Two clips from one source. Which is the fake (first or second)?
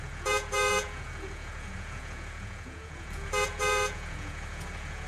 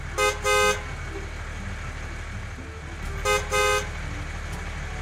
first